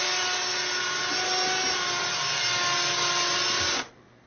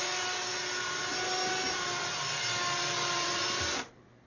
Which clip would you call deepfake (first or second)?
second